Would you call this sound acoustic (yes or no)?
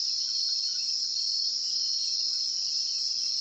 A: yes